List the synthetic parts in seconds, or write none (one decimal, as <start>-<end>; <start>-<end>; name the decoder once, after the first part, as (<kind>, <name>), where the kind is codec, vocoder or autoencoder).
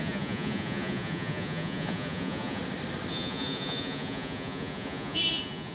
0.0-2.6 (vocoder, Vocos); 3.1-5.7